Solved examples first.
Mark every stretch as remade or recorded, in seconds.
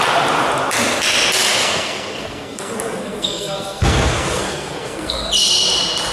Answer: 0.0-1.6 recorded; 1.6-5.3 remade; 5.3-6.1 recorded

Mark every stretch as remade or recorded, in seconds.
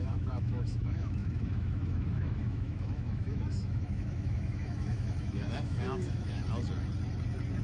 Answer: 0.0-6.4 remade; 6.4-7.6 recorded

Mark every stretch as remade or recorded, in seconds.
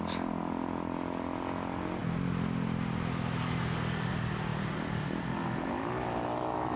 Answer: 0.0-6.8 recorded